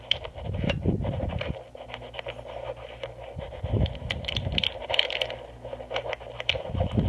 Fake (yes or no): no